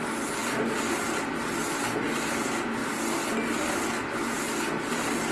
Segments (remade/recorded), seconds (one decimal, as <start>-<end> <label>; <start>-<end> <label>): 0.0-5.3 recorded